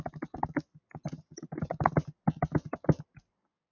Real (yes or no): yes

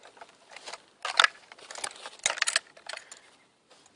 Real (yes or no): yes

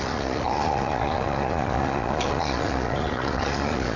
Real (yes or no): no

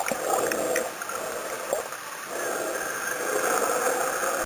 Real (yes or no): yes